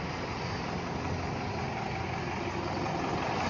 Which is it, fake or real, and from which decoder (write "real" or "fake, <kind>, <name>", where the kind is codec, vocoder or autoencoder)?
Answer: real